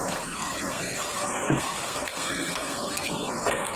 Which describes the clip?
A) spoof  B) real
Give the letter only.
A